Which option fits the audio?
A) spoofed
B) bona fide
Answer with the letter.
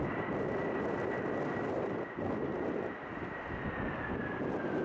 B